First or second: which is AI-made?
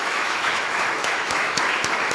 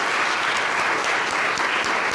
first